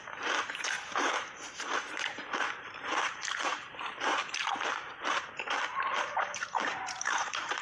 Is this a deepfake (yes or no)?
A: yes